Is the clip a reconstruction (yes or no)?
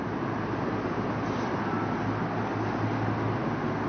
no